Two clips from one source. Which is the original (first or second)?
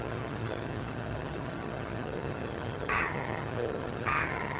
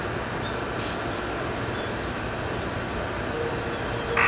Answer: second